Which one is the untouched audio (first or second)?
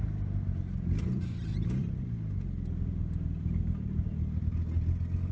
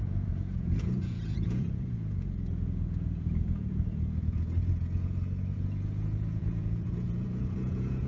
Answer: first